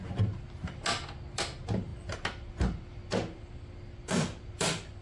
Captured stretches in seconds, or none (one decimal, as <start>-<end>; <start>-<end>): 0.0-5.0